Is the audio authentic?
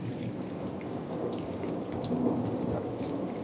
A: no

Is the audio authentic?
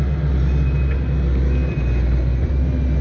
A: yes